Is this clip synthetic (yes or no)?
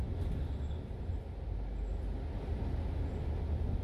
no